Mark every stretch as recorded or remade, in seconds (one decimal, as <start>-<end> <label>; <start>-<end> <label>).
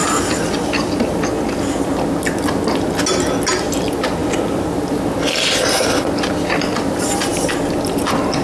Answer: 0.0-4.2 recorded; 4.2-5.2 remade; 5.2-8.4 recorded